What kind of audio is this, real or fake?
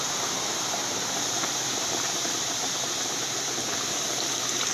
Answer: fake